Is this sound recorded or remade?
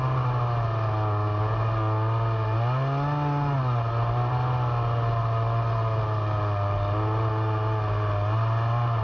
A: recorded